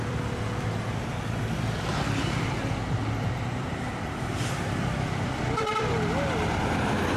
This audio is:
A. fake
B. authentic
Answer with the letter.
A